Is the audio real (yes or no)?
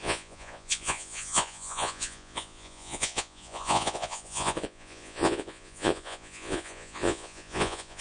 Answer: no